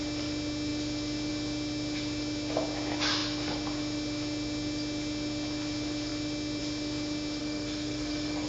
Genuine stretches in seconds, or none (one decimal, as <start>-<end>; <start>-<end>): 0.0-7.4